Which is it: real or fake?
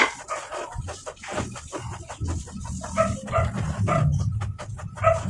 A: real